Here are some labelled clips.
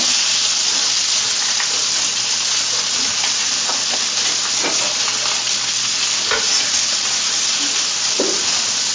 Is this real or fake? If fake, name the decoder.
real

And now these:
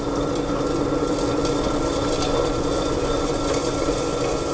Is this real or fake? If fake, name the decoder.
real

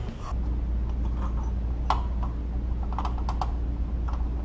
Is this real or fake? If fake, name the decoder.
real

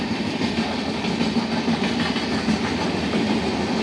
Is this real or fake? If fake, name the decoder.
real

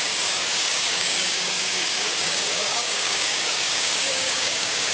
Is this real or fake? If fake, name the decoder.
fake, codec, DAC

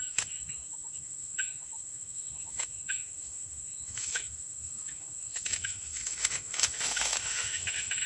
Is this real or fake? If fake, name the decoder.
fake, autoencoder, DAC-VAE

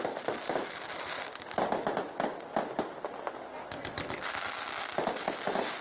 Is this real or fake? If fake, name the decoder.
real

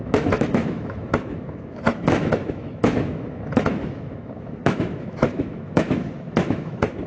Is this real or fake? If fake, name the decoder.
fake, autoencoder, DAC-VAE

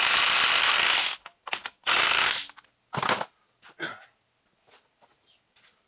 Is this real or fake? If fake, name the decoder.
real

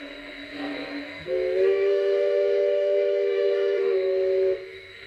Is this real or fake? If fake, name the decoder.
fake, codec, SNAC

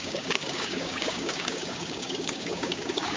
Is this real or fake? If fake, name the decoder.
fake, codec, DAC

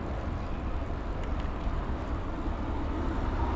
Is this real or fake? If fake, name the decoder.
real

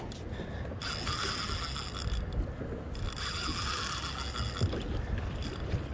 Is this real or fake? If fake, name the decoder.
real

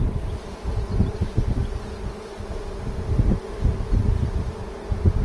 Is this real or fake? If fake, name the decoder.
real